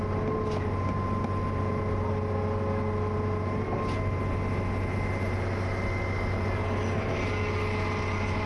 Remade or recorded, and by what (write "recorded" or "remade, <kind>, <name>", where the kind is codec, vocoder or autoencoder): recorded